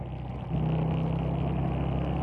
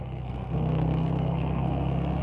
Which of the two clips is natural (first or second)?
first